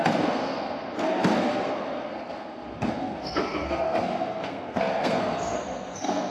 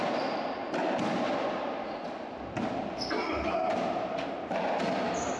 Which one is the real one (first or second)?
second